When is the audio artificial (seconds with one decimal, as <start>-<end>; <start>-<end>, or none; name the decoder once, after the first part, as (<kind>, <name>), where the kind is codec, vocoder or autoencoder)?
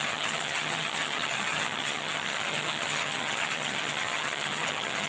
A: 0.0-5.1 (vocoder, HiFi-GAN)